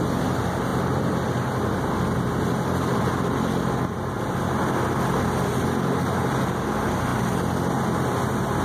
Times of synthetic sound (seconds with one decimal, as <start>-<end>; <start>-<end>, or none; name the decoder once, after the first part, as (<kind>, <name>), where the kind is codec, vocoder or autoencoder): none